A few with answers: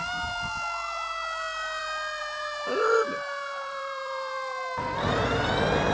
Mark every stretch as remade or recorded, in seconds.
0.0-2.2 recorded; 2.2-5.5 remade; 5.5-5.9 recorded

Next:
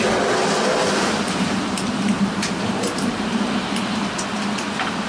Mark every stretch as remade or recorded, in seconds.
0.0-0.8 recorded; 0.8-3.8 remade; 3.8-5.1 recorded

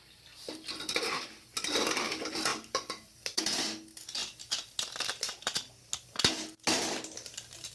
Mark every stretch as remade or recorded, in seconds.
0.0-2.5 recorded; 2.5-3.4 remade; 3.4-7.7 recorded

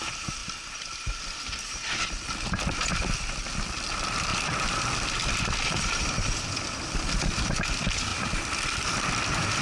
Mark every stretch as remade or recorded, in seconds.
0.0-0.4 remade; 0.4-1.2 recorded; 1.2-8.1 remade; 8.1-9.1 recorded; 9.1-9.6 remade

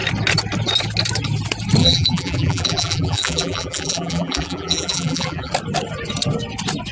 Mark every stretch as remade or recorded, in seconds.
0.0-1.8 recorded; 1.8-5.5 remade; 5.5-6.9 recorded